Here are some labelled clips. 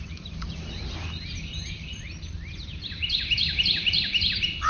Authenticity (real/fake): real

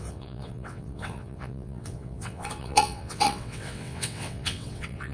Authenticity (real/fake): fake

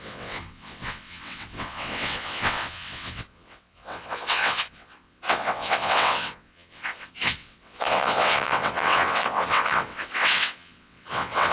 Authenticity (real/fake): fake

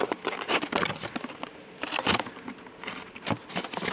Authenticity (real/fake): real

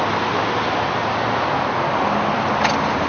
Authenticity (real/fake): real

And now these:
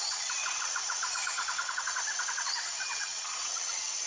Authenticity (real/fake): fake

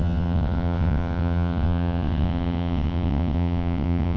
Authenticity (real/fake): fake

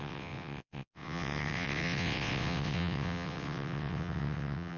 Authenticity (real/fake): fake